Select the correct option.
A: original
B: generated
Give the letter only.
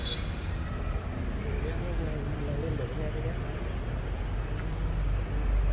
A